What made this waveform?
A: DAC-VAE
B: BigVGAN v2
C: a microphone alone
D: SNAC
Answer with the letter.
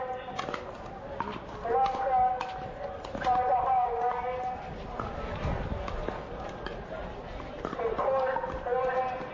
C